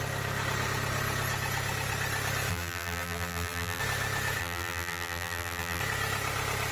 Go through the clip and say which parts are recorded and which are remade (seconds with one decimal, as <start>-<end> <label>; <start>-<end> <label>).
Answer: 0.0-2.5 recorded; 2.5-3.8 remade; 3.8-4.4 recorded; 4.4-5.8 remade; 5.8-6.7 recorded